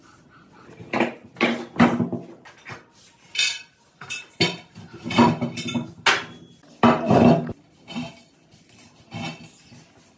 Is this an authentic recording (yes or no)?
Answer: yes